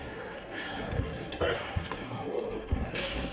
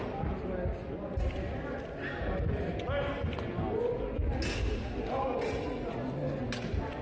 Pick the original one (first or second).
second